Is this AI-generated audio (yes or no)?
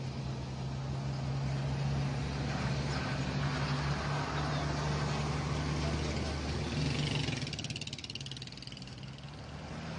no